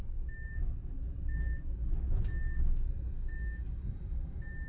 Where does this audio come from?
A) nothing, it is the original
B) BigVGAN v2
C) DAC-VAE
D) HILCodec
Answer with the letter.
A